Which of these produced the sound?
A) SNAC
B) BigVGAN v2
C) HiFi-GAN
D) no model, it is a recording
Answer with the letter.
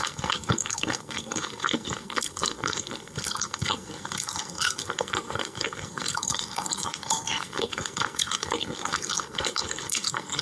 A